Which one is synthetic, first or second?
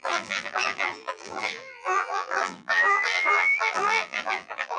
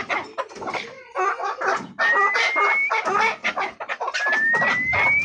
first